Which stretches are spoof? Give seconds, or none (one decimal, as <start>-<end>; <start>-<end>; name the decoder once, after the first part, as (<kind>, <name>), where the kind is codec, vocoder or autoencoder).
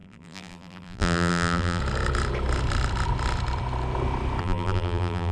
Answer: 0.0-1.8 (vocoder, BigVGAN v2); 4.4-5.3